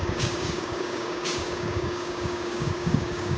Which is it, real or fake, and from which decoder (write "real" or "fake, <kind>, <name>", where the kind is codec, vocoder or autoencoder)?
fake, codec, DAC